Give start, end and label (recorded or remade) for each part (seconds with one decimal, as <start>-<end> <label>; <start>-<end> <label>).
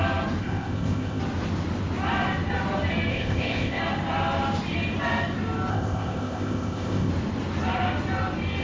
0.0-0.4 recorded; 0.4-1.2 remade; 1.2-3.1 recorded; 3.1-3.8 remade; 3.8-5.7 recorded; 5.7-7.1 remade; 7.1-8.6 recorded